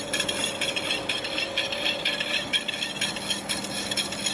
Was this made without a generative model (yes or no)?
yes